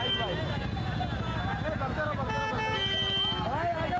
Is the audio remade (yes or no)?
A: no